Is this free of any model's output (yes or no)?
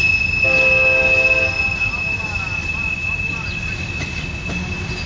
yes